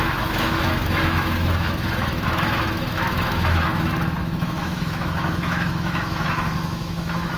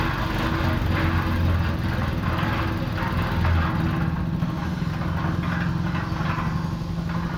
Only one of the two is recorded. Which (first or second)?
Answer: second